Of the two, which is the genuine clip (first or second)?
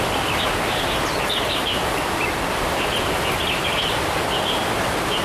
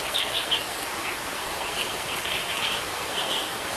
first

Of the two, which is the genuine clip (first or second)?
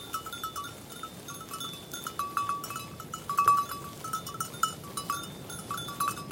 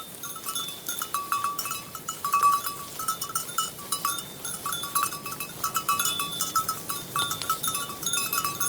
first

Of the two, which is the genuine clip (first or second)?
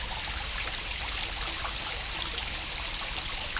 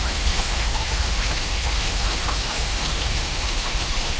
first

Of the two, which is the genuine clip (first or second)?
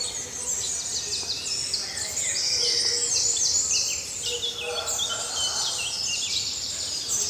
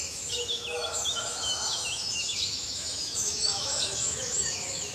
first